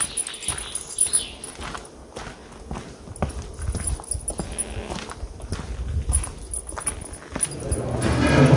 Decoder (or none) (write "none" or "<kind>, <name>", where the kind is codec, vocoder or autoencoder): none